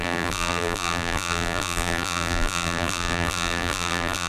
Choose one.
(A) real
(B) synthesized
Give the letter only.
B